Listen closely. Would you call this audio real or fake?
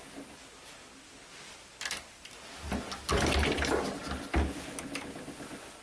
real